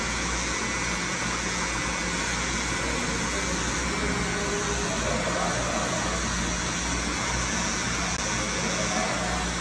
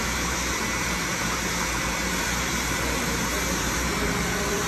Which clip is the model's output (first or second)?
second